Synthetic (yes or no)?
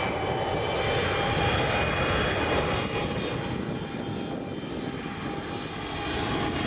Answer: no